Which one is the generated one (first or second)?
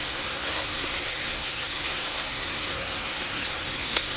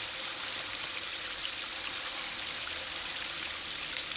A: first